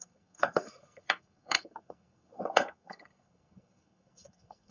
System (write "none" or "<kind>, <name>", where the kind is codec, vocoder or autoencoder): codec, SNAC